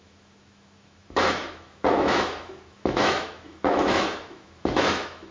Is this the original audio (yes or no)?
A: no